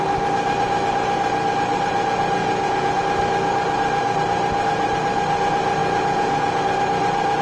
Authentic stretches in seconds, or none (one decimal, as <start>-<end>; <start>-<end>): 0.0-2.4; 3.0-5.8; 6.6-7.4